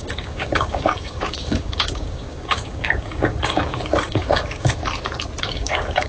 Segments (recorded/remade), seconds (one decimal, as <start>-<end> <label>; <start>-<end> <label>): 0.0-4.8 remade; 4.8-5.4 recorded; 5.4-6.1 remade

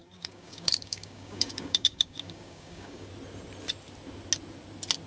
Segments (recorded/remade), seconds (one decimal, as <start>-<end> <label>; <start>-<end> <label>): 0.0-3.1 remade; 3.1-5.1 recorded

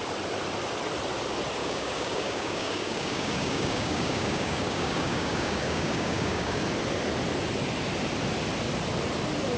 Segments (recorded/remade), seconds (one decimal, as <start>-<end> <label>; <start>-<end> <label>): 0.0-1.6 recorded; 1.6-6.6 remade; 6.6-9.6 recorded

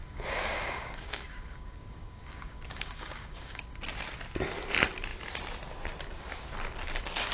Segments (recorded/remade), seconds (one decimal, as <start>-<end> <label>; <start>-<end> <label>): 0.0-3.8 remade; 3.8-7.3 recorded

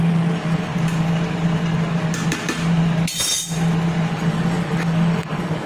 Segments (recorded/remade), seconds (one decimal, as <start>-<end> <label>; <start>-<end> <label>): 0.0-0.7 remade; 0.7-4.1 recorded; 4.1-5.7 remade

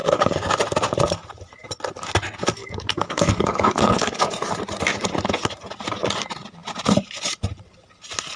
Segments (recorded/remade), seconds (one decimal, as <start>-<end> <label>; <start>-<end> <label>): 0.0-0.5 remade; 0.5-2.6 recorded; 2.6-4.5 remade; 4.5-8.4 recorded